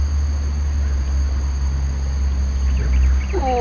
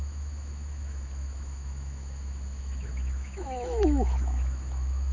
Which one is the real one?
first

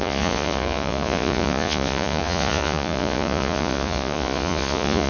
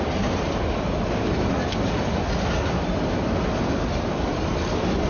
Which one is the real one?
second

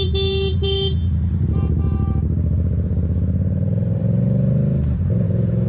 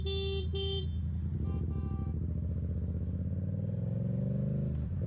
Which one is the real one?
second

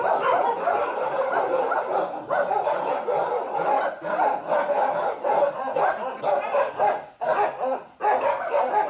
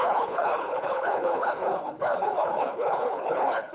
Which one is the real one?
first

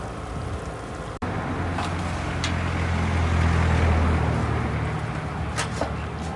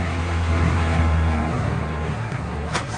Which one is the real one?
first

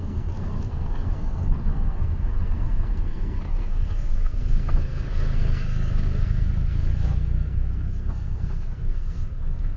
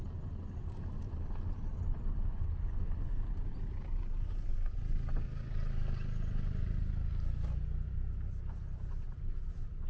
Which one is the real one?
second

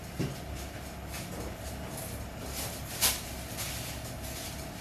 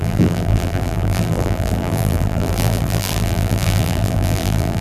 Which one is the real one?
first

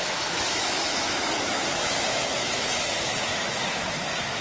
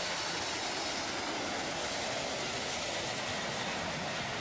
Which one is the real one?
second